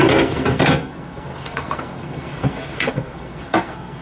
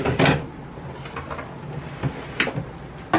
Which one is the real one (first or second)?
second